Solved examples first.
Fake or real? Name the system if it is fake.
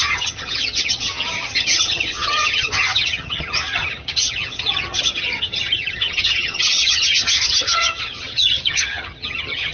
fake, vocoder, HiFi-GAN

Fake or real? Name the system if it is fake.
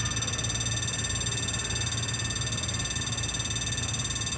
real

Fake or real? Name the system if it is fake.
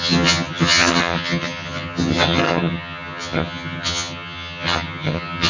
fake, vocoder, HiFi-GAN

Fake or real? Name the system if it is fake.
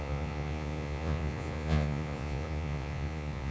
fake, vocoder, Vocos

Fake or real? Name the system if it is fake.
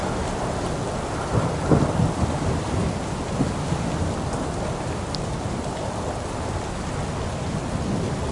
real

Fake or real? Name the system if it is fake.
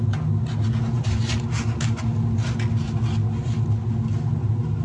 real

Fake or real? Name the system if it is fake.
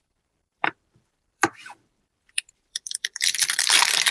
fake, vocoder, BigVGAN v2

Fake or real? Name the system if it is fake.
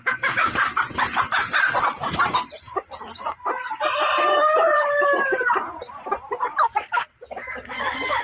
fake, vocoder, BigVGAN v2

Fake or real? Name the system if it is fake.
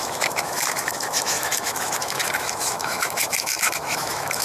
fake, autoencoder, DAC-VAE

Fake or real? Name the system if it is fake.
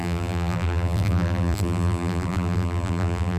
fake, vocoder, BigVGAN v2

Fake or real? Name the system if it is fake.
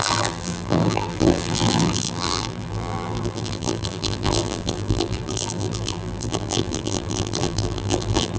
fake, vocoder, BigVGAN v2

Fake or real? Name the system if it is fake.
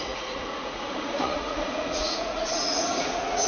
fake, vocoder, Vocos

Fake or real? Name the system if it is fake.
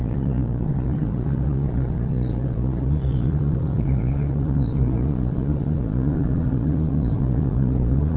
fake, vocoder, Vocos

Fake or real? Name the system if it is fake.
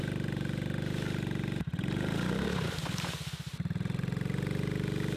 real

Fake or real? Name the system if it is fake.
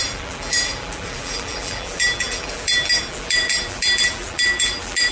fake, vocoder, BigVGAN v2